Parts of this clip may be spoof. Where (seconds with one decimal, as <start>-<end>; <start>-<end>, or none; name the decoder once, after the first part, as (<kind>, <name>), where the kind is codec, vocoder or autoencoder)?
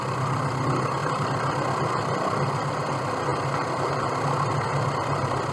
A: 3.3-3.9 (vocoder, BigVGAN v2)